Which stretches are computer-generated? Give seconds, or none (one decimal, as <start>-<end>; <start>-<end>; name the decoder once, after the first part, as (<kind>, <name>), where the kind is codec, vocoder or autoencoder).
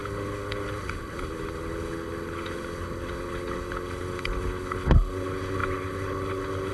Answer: 0.0-6.7 (codec, HILCodec)